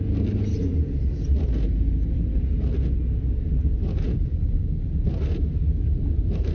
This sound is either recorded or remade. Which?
recorded